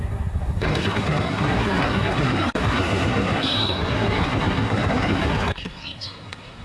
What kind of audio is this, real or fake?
fake